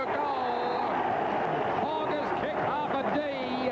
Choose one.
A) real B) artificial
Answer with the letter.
A